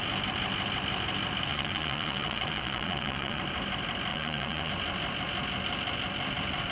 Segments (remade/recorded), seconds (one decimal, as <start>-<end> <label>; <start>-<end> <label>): 0.0-1.5 recorded; 1.5-3.4 remade; 3.4-4.1 recorded; 4.1-4.7 remade; 4.7-6.7 recorded